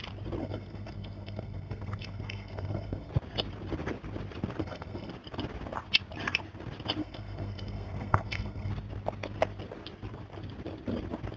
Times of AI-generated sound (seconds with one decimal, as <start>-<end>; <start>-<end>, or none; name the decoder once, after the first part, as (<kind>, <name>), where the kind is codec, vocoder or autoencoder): 0.4-3.1 (codec, SNAC); 4.6-5.1; 7.0-8.7